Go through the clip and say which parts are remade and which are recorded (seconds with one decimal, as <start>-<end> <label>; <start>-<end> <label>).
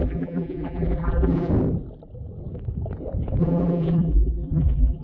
0.0-1.5 remade; 1.5-3.4 recorded; 3.4-5.0 remade